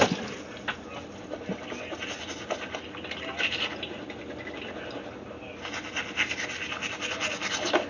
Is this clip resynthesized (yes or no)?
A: no